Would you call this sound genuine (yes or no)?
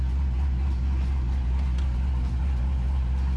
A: yes